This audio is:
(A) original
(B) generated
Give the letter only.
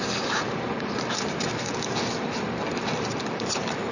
B